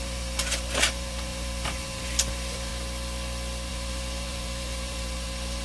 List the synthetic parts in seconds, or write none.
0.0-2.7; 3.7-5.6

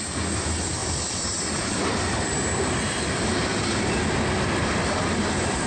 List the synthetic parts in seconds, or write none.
0.8-4.2

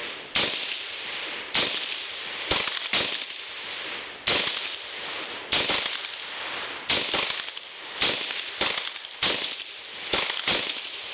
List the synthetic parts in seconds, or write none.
none

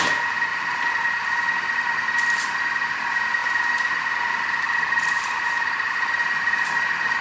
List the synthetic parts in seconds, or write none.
0.5-2.6; 3.4-6.6

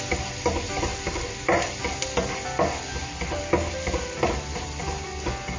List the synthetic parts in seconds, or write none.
none